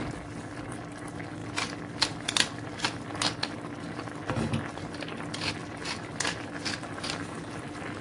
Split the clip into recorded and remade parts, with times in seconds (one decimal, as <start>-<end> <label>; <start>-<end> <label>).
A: 0.0-5.6 recorded; 5.6-6.3 remade; 6.3-8.0 recorded